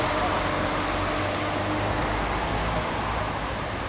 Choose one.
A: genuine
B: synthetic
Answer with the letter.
A